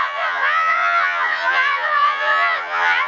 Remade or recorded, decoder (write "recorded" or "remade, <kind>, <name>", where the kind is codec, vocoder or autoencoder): remade, vocoder, Vocos